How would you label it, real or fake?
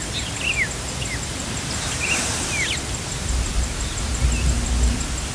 real